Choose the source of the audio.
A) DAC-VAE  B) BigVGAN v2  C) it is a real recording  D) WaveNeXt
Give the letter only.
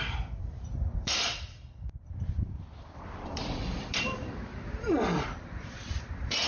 B